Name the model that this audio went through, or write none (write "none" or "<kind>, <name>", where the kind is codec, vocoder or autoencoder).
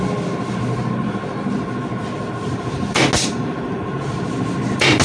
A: none